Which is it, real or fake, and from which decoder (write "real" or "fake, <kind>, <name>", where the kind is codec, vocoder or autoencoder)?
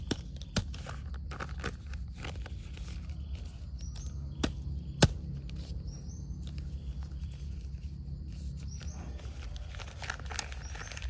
real